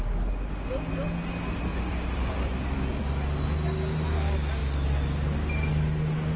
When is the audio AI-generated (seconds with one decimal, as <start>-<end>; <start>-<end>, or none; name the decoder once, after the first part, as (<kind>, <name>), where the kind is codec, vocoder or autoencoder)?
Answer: 1.7-3.0 (vocoder, BigVGAN v2)